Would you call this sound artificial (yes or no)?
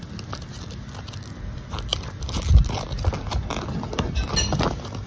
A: no